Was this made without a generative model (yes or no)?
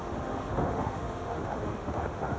no